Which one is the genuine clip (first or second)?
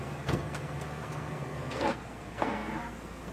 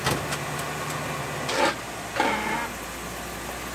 second